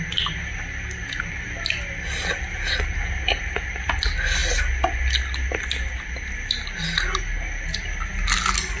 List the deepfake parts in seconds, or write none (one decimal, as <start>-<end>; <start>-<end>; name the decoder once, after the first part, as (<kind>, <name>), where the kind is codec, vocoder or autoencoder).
none